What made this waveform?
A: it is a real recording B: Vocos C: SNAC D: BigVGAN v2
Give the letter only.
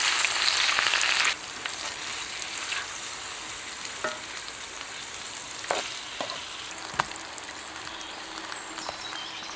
A